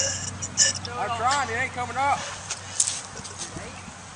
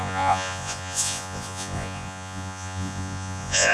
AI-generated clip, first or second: second